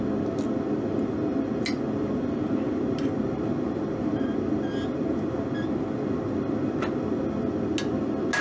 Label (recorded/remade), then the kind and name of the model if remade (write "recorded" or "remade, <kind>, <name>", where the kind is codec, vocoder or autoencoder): recorded